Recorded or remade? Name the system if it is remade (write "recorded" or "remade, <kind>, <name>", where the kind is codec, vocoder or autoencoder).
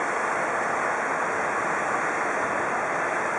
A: recorded